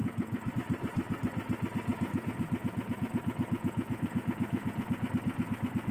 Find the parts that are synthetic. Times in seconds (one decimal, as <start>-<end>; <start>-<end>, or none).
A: 0.0-0.5; 1.9-5.1